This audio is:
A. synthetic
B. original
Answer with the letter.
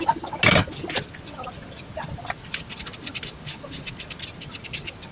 B